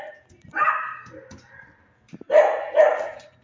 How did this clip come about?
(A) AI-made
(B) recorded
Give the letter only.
B